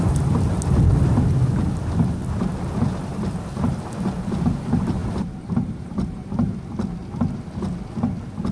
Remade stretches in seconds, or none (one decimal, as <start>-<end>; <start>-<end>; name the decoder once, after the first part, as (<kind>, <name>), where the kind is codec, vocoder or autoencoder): 5.0-6.6 (vocoder, BigVGAN v2)